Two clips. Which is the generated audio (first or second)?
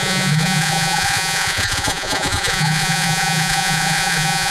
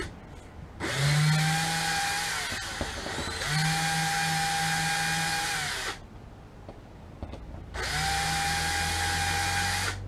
first